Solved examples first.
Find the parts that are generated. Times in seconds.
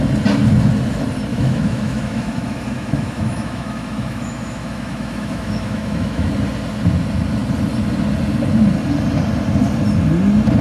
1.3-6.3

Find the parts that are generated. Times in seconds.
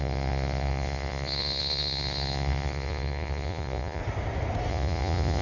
0.0-4.0; 4.7-5.4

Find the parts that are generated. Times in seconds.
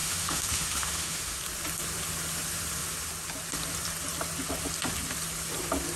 0.0-1.4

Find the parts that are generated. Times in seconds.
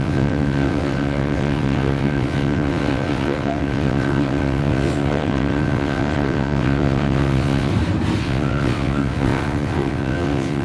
0.0-7.7; 8.2-10.6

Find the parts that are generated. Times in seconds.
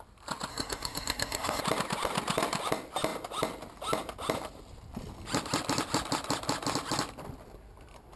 0.5-1.6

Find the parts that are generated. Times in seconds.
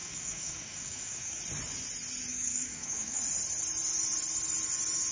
0.0-1.4; 2.3-3.2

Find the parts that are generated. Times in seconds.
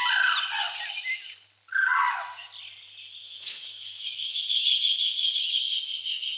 3.2-4.4; 5.6-6.4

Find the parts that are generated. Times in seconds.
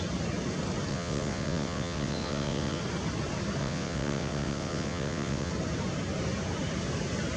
0.9-2.8; 3.6-5.5